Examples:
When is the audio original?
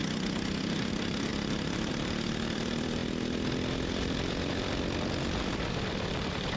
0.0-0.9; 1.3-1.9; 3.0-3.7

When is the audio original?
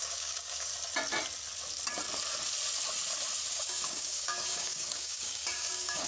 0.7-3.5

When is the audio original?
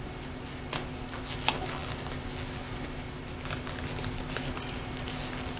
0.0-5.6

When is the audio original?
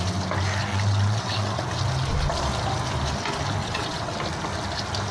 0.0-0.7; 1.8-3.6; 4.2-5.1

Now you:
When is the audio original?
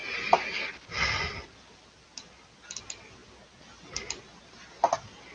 0.0-5.3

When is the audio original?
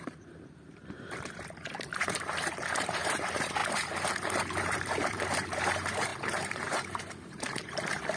none